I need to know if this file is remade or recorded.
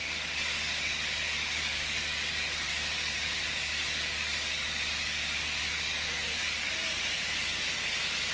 remade